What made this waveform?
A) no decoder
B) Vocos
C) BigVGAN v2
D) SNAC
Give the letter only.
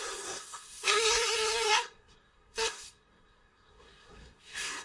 D